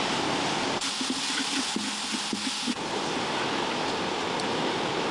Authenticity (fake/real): real